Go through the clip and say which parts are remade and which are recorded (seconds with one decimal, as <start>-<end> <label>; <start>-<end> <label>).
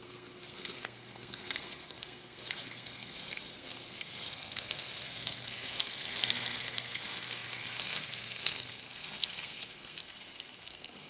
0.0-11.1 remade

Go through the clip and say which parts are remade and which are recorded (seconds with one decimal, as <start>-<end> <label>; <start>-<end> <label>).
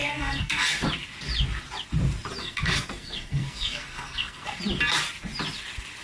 0.0-0.9 remade; 0.9-2.4 recorded; 2.4-4.6 remade; 4.6-6.0 recorded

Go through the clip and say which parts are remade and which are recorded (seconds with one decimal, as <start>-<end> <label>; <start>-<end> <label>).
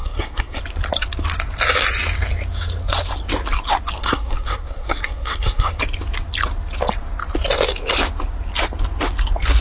0.0-0.6 remade; 0.6-4.0 recorded; 4.0-5.8 remade; 5.8-9.6 recorded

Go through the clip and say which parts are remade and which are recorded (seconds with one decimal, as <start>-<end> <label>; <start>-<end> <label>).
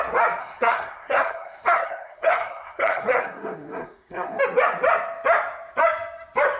0.0-0.4 recorded; 0.4-4.4 remade; 4.4-6.6 recorded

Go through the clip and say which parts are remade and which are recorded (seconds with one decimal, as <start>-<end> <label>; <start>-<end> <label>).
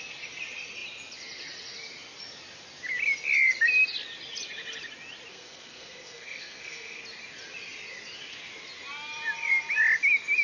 0.0-5.3 recorded; 5.3-7.0 remade; 7.0-10.4 recorded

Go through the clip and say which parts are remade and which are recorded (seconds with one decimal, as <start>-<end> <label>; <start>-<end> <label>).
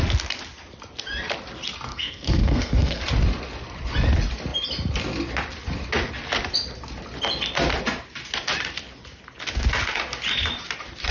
0.0-1.9 recorded; 1.9-3.0 remade; 3.0-11.1 recorded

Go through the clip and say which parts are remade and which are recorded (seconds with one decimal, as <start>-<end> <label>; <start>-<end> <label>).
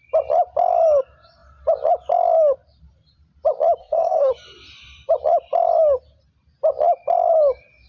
0.0-3.8 recorded; 3.8-4.3 remade; 4.3-7.9 recorded